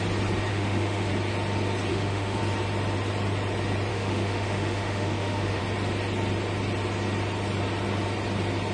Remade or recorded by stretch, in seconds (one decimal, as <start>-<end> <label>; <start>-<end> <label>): 0.0-0.5 recorded; 0.5-1.1 remade; 1.1-1.9 recorded; 1.9-2.4 remade; 2.4-3.9 recorded; 3.9-5.6 remade; 5.6-8.7 recorded